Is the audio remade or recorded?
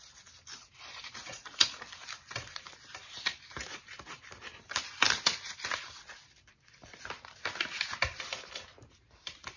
recorded